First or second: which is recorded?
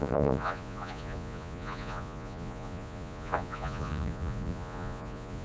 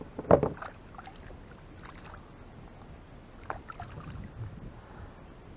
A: second